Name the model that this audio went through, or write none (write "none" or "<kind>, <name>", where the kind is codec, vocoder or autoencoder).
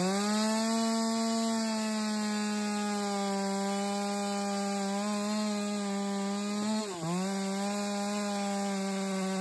none